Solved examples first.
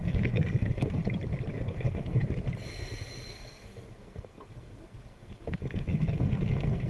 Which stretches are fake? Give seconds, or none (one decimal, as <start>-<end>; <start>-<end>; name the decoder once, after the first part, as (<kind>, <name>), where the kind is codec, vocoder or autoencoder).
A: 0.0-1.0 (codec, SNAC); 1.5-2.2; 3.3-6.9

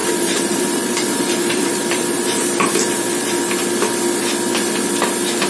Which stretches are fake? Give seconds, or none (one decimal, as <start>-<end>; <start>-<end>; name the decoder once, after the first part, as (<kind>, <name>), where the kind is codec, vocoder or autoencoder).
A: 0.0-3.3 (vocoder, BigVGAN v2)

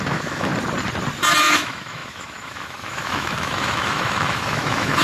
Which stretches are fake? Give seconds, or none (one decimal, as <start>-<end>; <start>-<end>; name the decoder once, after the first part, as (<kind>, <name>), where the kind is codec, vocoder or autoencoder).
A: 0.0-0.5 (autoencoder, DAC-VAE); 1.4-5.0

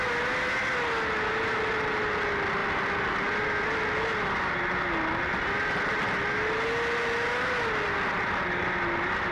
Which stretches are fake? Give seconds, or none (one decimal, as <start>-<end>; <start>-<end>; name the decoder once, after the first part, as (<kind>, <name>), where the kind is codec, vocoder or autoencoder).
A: none

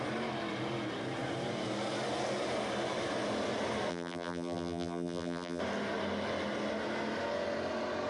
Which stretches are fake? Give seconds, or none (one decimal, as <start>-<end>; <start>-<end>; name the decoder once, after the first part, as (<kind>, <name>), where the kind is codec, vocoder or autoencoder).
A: 3.9-5.6 (vocoder, BigVGAN v2)

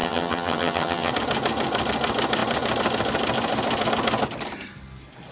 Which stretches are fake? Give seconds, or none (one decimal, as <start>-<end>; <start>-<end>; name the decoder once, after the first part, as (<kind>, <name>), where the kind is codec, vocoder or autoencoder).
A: 0.0-1.1 (vocoder, HiFi-GAN)